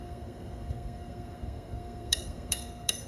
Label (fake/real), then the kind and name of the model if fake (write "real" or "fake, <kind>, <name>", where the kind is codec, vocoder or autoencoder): fake, codec, SNAC